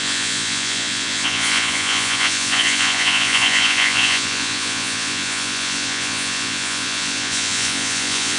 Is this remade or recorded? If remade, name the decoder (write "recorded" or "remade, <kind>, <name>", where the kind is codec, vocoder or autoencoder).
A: remade, vocoder, Vocos